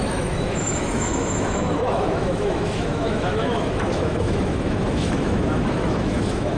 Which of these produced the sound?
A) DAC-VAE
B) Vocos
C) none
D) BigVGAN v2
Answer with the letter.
A